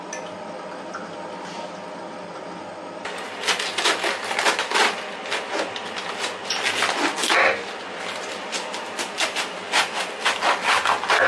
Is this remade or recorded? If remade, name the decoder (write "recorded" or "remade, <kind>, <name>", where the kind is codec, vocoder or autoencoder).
recorded